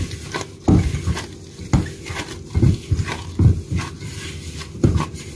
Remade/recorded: recorded